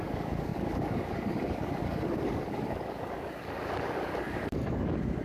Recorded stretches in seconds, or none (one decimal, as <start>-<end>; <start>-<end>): none